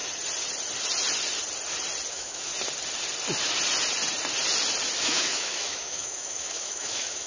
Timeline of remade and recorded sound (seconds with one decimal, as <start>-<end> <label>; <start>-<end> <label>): 0.0-2.1 recorded; 2.1-2.5 remade; 2.5-5.0 recorded; 5.0-7.3 remade

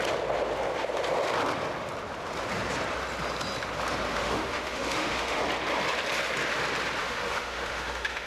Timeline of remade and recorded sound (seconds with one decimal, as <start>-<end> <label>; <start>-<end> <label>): 0.0-4.1 recorded; 4.1-5.4 remade; 5.4-7.0 recorded; 7.0-8.3 remade

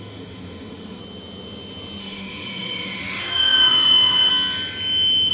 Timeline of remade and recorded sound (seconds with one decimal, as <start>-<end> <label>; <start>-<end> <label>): 0.0-1.0 remade; 1.0-2.0 recorded; 2.0-4.3 remade; 4.3-5.3 recorded

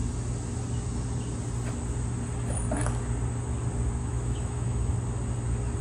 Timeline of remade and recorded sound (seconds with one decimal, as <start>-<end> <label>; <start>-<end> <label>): 0.0-4.0 recorded; 4.0-4.9 remade; 4.9-5.8 recorded

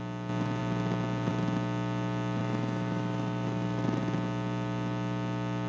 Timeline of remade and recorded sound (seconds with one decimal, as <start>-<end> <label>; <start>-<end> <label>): 0.0-2.4 recorded; 2.4-4.0 remade; 4.0-5.7 recorded